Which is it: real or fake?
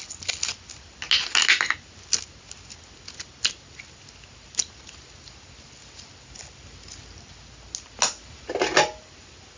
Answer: real